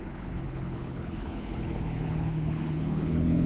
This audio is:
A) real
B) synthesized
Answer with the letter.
B